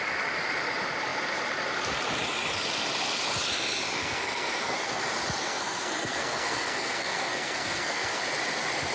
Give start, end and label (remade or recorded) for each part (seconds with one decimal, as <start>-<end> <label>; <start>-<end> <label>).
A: 0.0-4.0 recorded; 4.0-5.0 remade; 5.0-5.4 recorded; 5.4-8.2 remade; 8.2-8.9 recorded